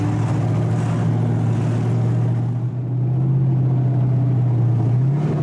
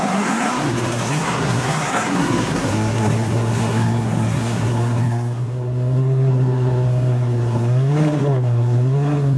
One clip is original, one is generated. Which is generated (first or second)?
second